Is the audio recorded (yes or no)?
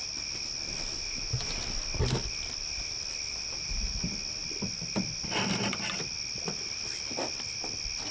yes